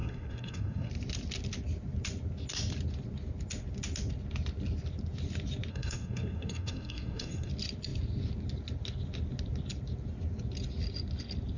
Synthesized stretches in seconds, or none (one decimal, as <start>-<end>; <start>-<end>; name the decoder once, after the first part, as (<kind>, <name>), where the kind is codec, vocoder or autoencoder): 0.0-0.9 (codec, SNAC); 5.7-7.5

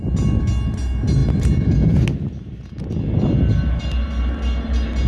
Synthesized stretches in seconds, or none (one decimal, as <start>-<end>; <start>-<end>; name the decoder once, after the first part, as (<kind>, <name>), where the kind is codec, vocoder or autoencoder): none

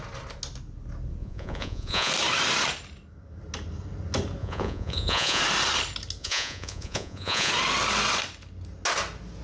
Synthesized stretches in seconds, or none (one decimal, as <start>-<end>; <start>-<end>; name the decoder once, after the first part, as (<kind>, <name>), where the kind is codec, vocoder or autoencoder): 1.2-2.1 (vocoder, Vocos); 4.4-5.4; 6.2-7.5

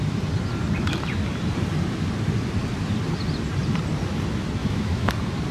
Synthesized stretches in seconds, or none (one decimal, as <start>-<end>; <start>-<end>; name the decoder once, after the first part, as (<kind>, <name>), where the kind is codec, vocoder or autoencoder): 4.6-5.1 (autoencoder, DAC-VAE)

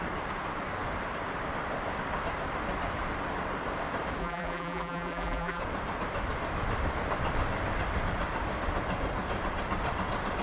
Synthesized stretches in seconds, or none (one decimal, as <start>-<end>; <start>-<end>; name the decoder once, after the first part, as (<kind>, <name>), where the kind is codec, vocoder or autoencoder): 4.2-5.6 (vocoder, BigVGAN v2)